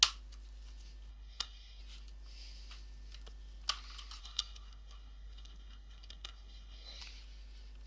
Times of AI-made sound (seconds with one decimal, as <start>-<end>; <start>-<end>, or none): 1.1-1.8; 4.2-7.0